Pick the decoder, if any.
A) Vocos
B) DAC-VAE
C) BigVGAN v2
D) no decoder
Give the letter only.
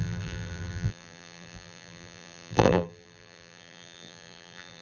C